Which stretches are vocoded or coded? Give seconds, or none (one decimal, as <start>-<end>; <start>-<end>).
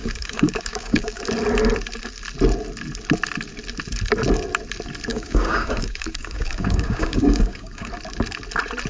0.0-1.2; 5.1-7.9